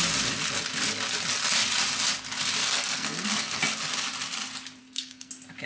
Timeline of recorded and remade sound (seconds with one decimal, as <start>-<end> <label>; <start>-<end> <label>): 0.0-2.6 recorded; 2.6-3.6 remade; 3.6-4.8 recorded; 4.8-5.3 remade; 5.3-5.7 recorded